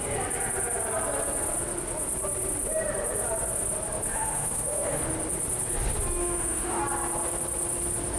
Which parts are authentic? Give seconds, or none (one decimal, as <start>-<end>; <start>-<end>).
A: 0.0-4.1; 5.0-6.2; 6.8-8.2